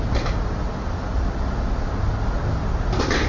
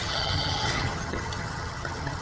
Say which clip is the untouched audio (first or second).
first